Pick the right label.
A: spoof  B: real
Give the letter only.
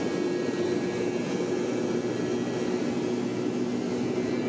B